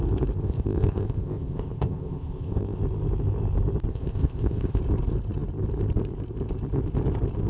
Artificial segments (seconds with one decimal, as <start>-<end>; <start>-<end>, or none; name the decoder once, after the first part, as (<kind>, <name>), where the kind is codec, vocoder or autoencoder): 0.4-2.8 (codec, ZipCodec); 3.9-4.8